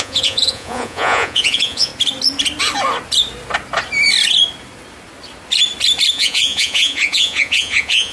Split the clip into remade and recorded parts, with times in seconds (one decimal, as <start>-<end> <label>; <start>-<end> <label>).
0.0-1.9 remade; 1.9-6.1 recorded; 6.1-8.1 remade